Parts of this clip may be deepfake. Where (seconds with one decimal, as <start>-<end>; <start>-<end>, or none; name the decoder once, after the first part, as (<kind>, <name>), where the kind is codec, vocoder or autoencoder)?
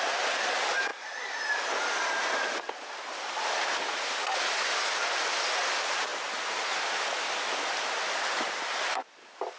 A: none